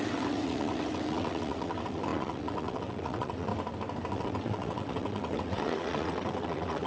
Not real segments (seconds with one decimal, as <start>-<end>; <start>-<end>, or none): 0.0-3.5; 4.1-6.9